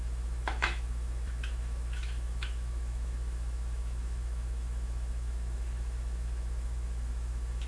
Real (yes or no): no